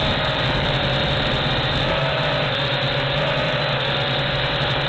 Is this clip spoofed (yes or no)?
yes